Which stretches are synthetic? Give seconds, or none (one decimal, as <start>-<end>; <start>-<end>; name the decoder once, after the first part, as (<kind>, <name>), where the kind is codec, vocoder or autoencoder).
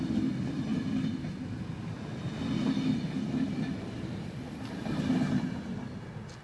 none